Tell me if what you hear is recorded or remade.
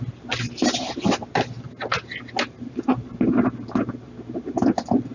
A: recorded